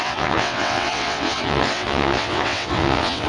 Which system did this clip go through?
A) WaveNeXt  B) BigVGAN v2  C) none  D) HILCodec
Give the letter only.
A